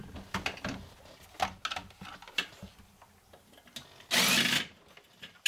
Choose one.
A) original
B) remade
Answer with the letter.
A